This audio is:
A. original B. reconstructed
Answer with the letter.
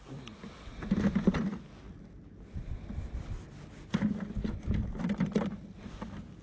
A